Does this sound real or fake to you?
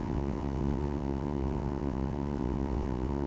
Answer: fake